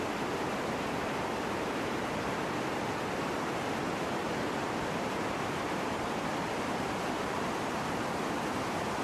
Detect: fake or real fake